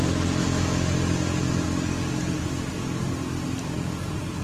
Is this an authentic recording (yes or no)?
yes